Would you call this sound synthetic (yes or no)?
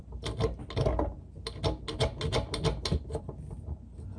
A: no